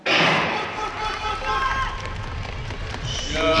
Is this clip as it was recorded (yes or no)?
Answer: yes